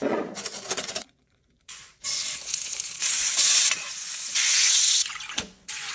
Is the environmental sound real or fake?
fake